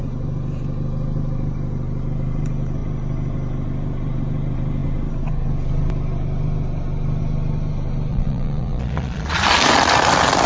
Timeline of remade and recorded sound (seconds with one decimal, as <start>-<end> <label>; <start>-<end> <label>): 0.0-8.1 recorded; 8.1-9.4 remade; 9.4-10.5 recorded